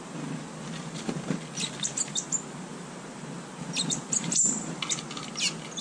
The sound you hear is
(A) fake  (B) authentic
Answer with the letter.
B